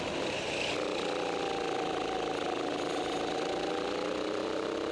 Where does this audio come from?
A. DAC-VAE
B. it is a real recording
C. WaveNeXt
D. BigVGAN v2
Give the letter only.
B